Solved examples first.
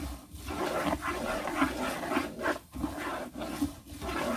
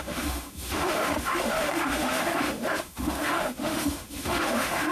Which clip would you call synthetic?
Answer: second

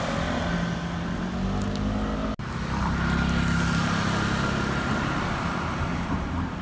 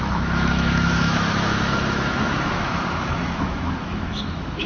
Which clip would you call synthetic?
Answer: second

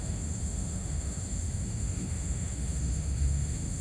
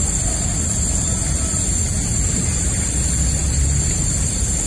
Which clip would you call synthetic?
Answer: first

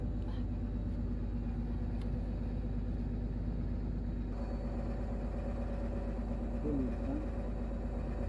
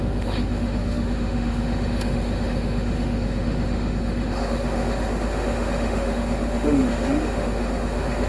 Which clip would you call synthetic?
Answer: second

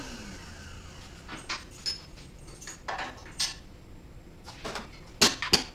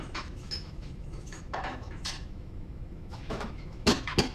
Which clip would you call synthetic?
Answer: second